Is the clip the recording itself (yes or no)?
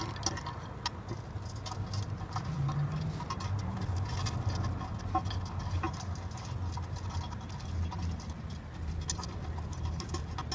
yes